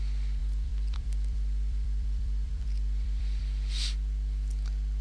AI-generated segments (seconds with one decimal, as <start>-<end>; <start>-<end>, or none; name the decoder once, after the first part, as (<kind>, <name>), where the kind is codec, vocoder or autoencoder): 0.4-3.4 (vocoder, BigVGAN v2)